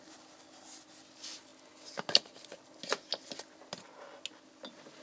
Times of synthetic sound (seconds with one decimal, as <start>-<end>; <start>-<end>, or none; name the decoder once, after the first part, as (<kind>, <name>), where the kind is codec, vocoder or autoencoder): none